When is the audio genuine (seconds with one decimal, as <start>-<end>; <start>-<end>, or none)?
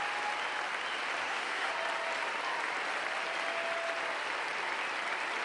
0.0-1.2; 1.7-5.4